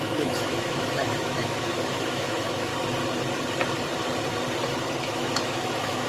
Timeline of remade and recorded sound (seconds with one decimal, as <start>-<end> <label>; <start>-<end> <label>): 0.0-2.7 remade; 2.7-5.0 recorded; 5.0-6.1 remade